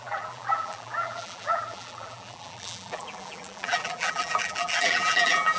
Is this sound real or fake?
fake